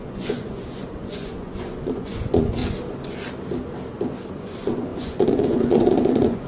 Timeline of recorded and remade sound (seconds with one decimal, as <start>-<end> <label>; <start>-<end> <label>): 0.0-2.6 remade; 2.6-4.3 recorded; 4.3-6.5 remade